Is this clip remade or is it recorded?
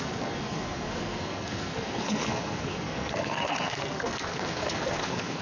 remade